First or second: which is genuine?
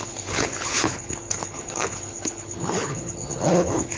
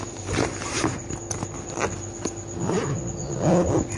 second